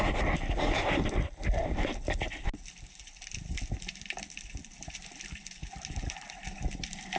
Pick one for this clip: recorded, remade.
recorded